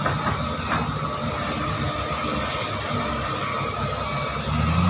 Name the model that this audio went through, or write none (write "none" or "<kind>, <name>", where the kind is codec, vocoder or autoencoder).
none